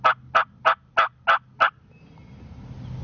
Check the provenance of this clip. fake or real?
real